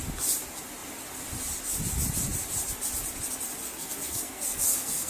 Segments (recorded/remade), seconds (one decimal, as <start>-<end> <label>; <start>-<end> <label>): 0.0-3.6 recorded; 3.6-5.1 remade